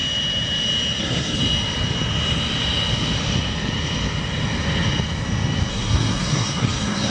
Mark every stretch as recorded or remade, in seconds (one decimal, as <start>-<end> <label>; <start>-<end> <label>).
0.0-1.0 recorded; 1.0-1.4 remade; 1.4-5.7 recorded; 5.7-7.1 remade